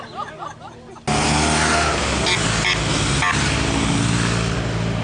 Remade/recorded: recorded